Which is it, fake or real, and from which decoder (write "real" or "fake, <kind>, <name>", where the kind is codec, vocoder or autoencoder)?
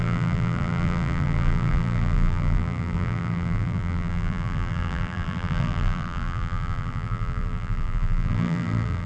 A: fake, vocoder, BigVGAN v2